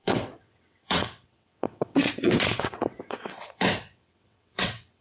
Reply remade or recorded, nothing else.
remade